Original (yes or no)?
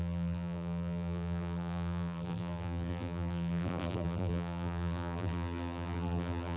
no